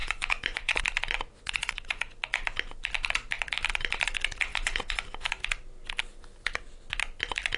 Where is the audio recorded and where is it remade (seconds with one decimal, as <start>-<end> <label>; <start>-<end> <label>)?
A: 0.0-0.8 remade; 0.8-1.3 recorded; 1.3-2.0 remade; 2.0-4.5 recorded; 4.5-5.3 remade; 5.3-7.6 recorded